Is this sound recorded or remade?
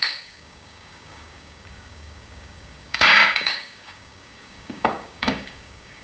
remade